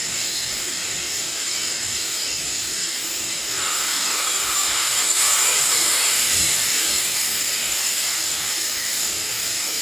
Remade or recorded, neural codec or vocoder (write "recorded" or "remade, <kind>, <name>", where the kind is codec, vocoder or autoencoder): remade, codec, DAC